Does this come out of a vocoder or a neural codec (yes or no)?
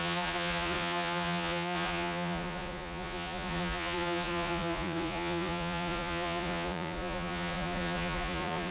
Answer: yes